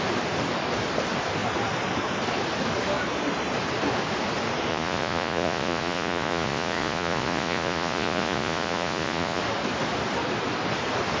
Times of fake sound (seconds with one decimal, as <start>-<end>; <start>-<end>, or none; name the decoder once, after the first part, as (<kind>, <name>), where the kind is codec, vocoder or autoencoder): 4.7-9.4 (vocoder, Vocos)